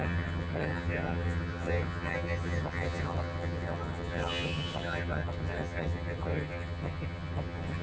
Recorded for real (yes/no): no